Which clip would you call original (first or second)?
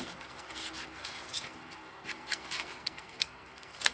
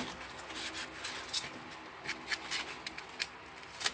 second